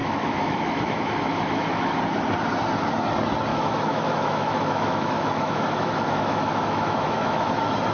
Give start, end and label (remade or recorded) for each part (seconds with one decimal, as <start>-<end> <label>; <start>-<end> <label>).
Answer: 0.0-2.0 remade; 2.0-3.5 recorded; 3.5-7.5 remade; 7.5-7.9 recorded